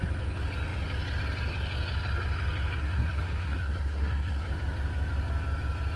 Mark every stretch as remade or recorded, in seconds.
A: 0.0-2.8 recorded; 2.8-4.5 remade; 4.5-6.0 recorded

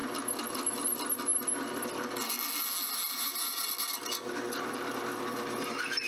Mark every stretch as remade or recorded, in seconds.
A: 0.0-6.1 recorded

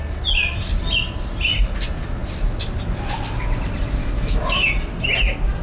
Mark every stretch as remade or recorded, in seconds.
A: 0.0-4.0 recorded; 4.0-4.7 remade; 4.7-5.6 recorded

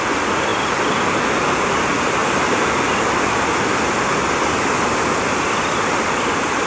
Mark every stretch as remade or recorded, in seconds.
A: 0.0-6.7 recorded

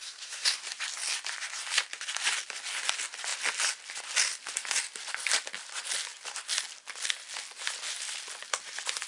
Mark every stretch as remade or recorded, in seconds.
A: 0.0-0.6 remade; 0.6-9.1 recorded

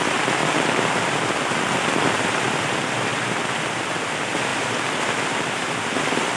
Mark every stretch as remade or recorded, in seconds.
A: 0.0-6.4 recorded

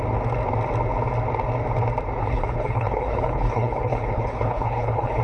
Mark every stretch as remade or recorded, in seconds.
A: 0.0-2.2 recorded; 2.2-5.2 remade